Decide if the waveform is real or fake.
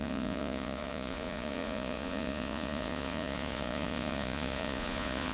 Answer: fake